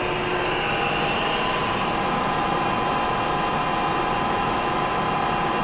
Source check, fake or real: real